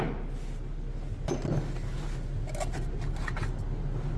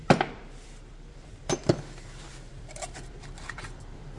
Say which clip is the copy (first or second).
second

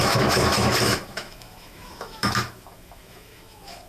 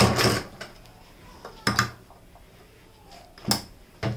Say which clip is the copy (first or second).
first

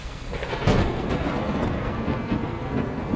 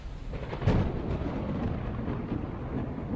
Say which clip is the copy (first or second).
first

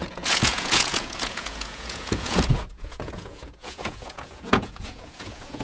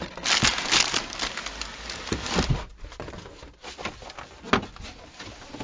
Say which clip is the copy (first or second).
first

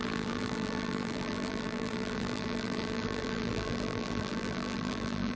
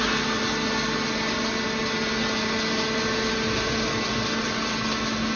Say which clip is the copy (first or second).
first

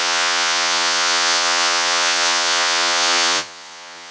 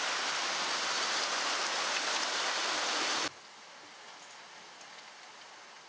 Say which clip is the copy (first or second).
first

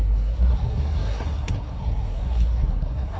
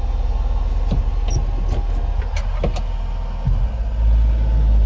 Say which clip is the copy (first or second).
first